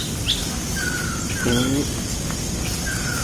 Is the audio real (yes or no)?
yes